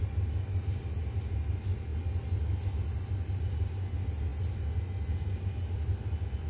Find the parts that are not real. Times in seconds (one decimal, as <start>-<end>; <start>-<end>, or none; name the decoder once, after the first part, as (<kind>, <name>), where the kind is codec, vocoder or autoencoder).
none